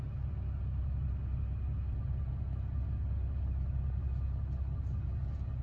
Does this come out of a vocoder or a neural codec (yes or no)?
no